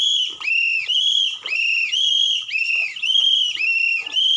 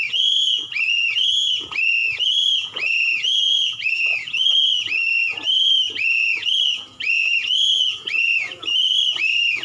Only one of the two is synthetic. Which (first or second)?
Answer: second